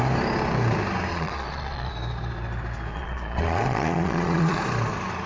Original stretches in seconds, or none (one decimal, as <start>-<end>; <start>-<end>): 0.0-1.1; 1.9-2.9; 4.6-5.3